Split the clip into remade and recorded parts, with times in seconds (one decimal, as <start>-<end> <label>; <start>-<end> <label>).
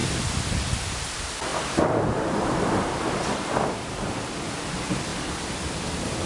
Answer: 0.0-1.5 remade; 1.5-2.5 recorded; 2.5-6.3 remade